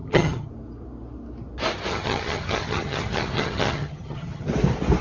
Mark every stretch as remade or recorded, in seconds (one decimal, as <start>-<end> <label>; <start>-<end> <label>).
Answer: 0.0-0.5 remade; 0.5-1.9 recorded; 1.9-4.5 remade; 4.5-5.0 recorded

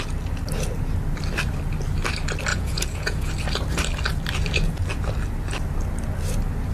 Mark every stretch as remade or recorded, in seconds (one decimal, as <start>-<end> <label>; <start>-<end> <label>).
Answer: 0.0-2.5 recorded; 2.5-3.3 remade; 3.3-6.7 recorded